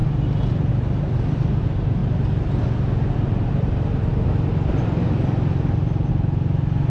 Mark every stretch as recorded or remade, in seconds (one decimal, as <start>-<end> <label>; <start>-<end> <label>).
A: 0.0-6.9 recorded